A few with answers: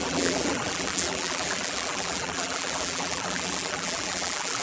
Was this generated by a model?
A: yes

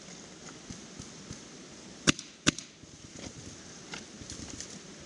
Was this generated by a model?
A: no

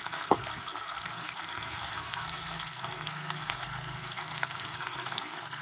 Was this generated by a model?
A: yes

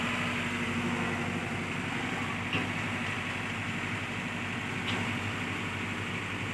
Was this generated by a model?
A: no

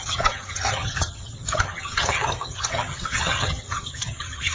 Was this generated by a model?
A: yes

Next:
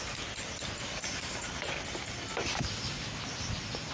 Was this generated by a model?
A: no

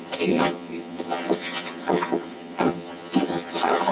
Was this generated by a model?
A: yes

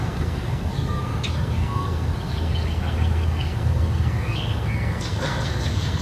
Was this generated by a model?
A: yes